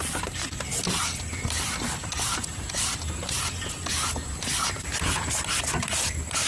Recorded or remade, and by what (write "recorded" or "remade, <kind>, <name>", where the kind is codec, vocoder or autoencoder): recorded